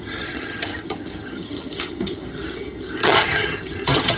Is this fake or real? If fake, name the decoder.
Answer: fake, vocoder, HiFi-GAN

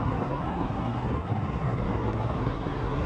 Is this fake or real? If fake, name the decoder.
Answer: fake, codec, SNAC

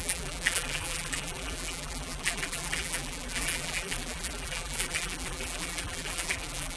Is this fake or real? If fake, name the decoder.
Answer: fake, vocoder, BigVGAN v2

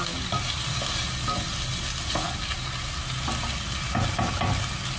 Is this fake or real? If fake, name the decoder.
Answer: real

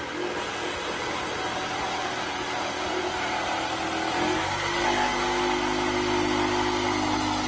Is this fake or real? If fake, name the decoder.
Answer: real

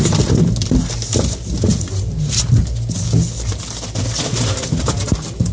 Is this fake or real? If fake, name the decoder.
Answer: real